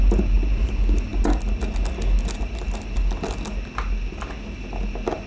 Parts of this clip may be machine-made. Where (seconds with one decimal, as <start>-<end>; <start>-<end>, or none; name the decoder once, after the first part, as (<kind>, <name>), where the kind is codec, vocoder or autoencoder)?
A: none